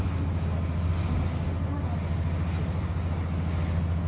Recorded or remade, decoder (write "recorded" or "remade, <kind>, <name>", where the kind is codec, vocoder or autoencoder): recorded